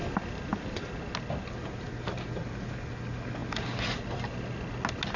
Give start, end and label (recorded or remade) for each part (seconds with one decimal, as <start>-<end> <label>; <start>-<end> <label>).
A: 0.0-5.2 recorded

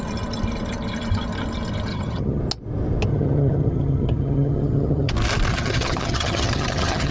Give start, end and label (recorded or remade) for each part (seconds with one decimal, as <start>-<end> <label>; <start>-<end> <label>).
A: 0.0-1.9 recorded; 1.9-2.4 remade; 2.4-3.1 recorded; 3.1-5.1 remade; 5.1-5.5 recorded; 5.5-7.1 remade

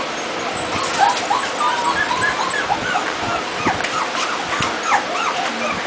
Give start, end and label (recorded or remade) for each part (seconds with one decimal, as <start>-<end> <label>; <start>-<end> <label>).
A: 0.0-5.9 recorded

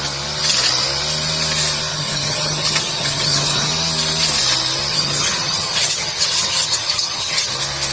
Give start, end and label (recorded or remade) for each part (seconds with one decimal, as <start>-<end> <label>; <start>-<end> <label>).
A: 0.0-1.9 recorded; 1.9-3.7 remade; 3.7-4.9 recorded; 4.9-7.5 remade; 7.5-7.9 recorded

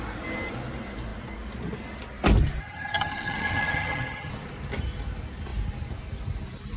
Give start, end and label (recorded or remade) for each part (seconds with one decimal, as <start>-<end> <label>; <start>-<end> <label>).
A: 0.0-2.6 recorded; 2.6-4.3 remade; 4.3-6.8 recorded